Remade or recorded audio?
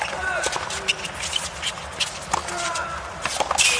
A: recorded